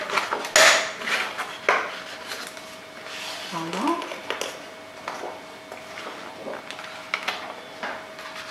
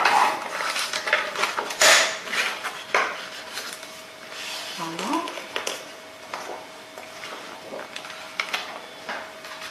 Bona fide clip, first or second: first